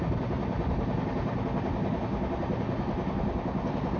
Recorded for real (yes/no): yes